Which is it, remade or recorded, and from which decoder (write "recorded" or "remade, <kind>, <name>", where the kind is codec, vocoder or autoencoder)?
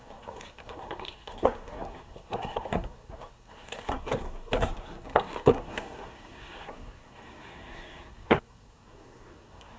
remade, codec, SNAC